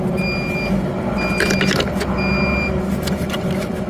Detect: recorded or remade recorded